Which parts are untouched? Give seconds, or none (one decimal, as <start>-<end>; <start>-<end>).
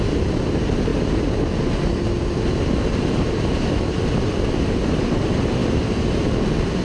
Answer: 0.0-6.8